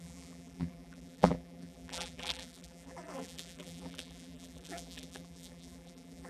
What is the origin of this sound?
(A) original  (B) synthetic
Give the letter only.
B